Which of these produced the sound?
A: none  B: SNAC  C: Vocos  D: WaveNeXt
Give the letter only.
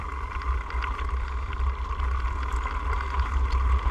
A